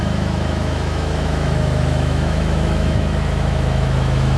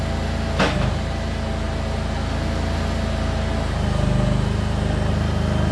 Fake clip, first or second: first